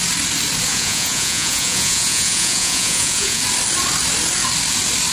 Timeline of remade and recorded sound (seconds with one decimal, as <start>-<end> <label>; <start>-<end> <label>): 0.0-0.7 recorded; 0.7-3.4 remade; 3.4-5.1 recorded